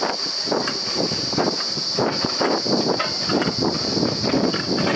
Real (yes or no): yes